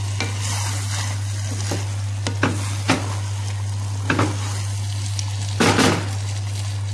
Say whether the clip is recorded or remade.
recorded